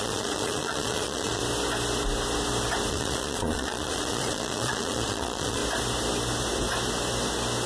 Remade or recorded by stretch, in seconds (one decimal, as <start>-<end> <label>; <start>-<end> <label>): 0.0-1.4 remade; 1.4-2.9 recorded; 2.9-5.6 remade; 5.6-7.7 recorded